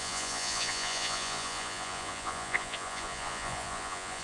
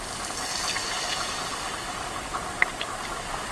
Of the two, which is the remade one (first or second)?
first